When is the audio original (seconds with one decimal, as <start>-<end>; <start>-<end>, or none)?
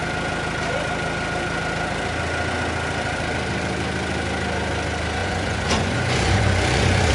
0.0-5.2